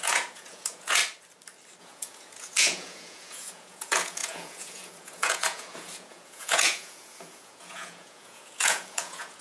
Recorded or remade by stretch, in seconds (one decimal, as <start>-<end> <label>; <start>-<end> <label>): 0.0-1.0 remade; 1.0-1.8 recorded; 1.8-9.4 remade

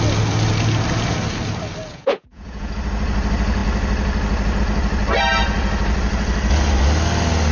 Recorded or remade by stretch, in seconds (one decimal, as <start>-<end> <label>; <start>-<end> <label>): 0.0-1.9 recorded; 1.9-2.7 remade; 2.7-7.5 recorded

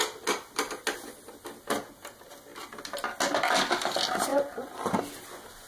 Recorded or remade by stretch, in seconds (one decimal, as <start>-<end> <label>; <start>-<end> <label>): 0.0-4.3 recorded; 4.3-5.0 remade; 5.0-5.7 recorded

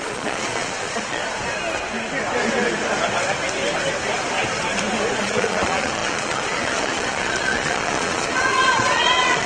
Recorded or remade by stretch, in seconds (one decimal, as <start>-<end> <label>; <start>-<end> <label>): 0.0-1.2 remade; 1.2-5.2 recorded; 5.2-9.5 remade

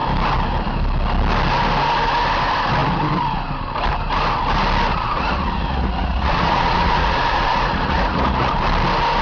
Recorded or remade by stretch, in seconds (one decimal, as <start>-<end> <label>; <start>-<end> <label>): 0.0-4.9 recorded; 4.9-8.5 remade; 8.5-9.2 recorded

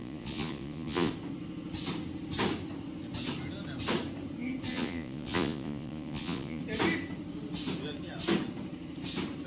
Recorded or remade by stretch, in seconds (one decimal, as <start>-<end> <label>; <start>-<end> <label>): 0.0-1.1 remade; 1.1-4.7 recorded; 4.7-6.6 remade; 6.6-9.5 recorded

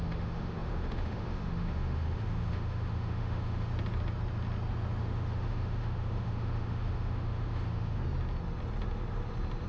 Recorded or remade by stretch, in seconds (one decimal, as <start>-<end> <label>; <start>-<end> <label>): 0.0-3.7 remade; 3.7-5.0 recorded; 5.0-8.0 remade; 8.0-9.7 recorded